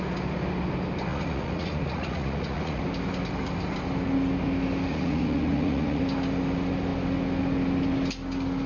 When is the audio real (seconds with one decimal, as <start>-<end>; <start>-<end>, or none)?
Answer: 0.0-1.1; 2.8-4.9; 6.0-8.7